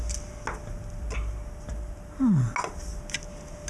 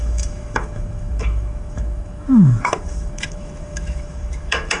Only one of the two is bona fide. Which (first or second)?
first